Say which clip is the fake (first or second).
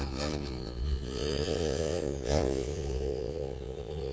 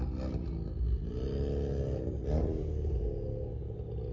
first